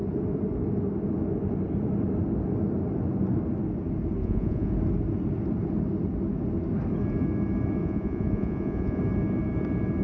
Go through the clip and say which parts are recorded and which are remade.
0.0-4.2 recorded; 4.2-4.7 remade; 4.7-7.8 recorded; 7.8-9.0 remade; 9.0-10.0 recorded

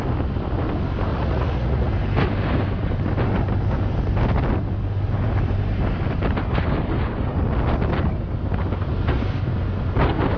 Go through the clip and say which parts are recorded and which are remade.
0.0-1.1 recorded; 1.1-1.9 remade; 1.9-10.4 recorded